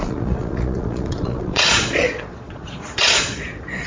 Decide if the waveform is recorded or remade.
remade